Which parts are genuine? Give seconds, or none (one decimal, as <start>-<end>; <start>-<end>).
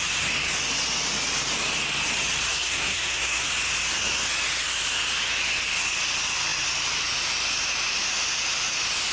0.0-2.5; 3.5-9.1